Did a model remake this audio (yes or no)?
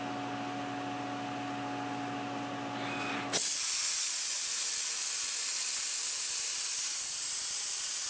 no